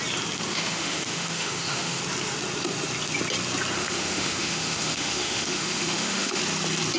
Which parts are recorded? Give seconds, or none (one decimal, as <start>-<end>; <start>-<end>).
0.0-0.5; 2.0-3.8; 6.4-7.0

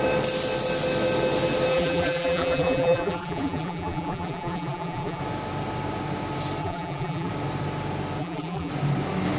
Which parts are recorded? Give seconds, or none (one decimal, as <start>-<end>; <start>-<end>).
0.0-1.7; 5.2-6.6; 7.3-8.2; 8.7-9.4

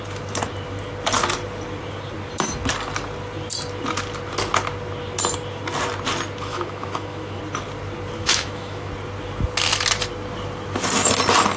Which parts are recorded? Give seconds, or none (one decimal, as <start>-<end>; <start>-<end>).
0.0-6.5; 7.4-8.2; 8.9-11.6

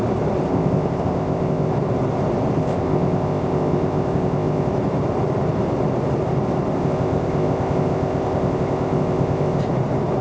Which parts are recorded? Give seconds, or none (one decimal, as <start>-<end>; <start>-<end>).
0.0-0.5; 1.7-2.6; 4.7-6.8; 9.6-10.2

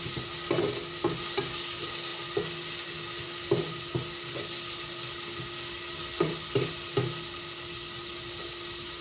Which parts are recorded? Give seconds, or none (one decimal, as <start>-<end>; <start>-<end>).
0.0-9.0